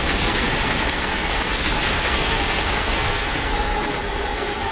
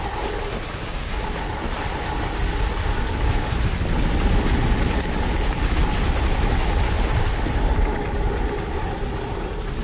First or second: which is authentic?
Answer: second